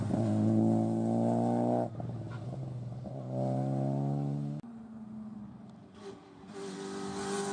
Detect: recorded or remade recorded